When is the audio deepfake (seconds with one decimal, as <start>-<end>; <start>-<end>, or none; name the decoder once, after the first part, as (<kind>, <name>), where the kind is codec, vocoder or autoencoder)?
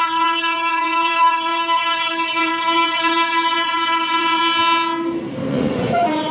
0.0-4.4 (vocoder, Vocos); 5.5-6.3